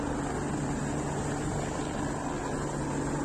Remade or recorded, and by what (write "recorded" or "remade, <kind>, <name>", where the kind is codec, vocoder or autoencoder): recorded